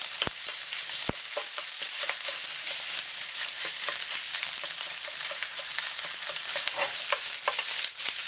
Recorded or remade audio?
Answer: remade